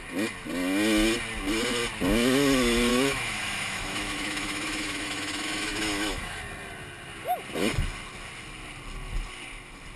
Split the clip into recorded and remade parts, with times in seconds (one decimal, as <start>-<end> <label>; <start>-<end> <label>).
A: 0.0-2.9 recorded; 2.9-6.4 remade; 6.4-10.0 recorded